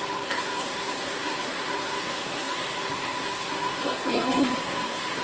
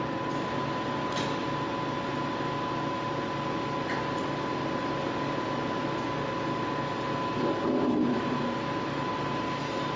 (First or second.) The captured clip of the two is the second